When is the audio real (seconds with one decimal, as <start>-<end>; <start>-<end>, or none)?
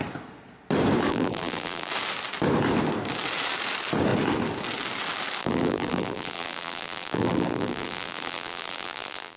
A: 0.0-1.1; 1.9-5.4